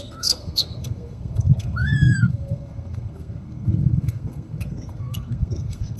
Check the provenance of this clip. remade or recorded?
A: remade